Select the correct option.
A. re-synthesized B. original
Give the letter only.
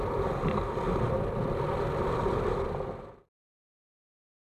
B